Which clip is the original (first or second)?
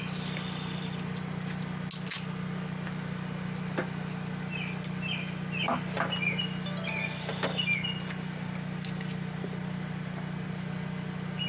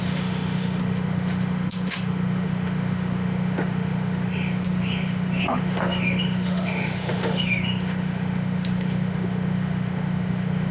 first